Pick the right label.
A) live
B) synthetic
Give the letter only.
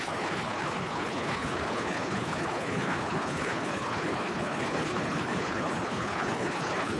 B